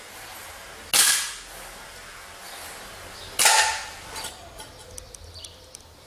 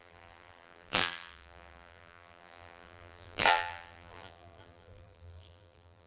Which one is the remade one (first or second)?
second